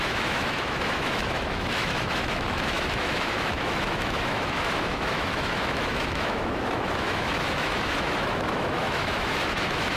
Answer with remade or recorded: remade